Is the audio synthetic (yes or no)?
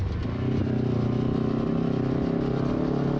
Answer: no